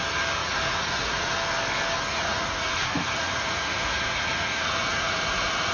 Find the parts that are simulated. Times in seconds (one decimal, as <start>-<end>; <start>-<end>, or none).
0.4-1.3; 2.1-5.7